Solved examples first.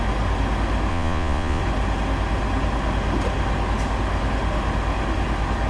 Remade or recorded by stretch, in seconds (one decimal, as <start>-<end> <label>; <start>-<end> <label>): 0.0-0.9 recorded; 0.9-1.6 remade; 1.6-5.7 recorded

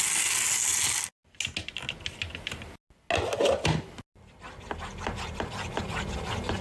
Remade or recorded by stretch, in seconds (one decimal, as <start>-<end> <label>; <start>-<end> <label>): 0.0-6.6 recorded

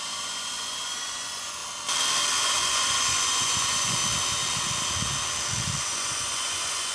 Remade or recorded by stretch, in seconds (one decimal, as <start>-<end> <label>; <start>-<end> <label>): 0.0-1.6 remade; 1.6-2.4 recorded; 2.4-4.0 remade; 4.0-5.8 recorded; 5.8-6.9 remade

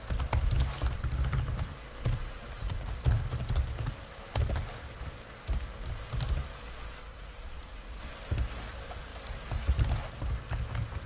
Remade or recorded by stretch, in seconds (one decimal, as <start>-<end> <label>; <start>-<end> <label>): 0.0-2.2 recorded; 2.2-2.9 remade; 2.9-7.0 recorded; 7.0-8.0 remade; 8.0-11.1 recorded